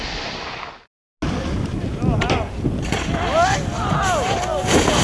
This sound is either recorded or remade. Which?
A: recorded